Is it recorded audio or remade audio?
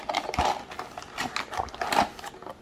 recorded